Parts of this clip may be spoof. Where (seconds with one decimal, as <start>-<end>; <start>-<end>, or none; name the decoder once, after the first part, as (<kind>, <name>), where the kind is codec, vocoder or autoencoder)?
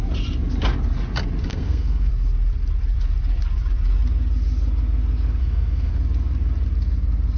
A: 1.5-2.1 (codec, SNAC); 5.4-5.9